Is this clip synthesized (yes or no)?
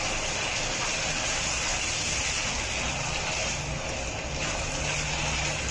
no